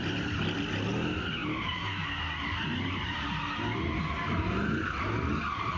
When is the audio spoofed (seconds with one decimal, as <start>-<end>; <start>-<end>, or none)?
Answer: none